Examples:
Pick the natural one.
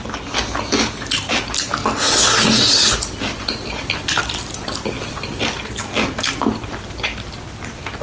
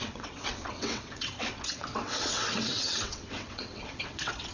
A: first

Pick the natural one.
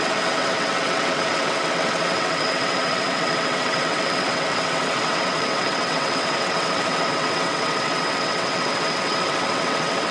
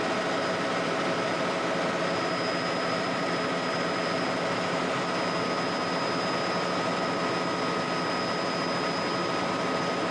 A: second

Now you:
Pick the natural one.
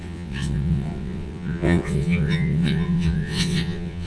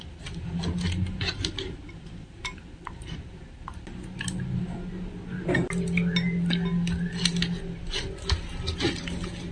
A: second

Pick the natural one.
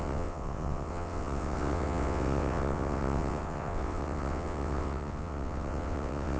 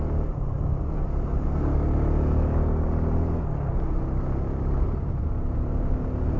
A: second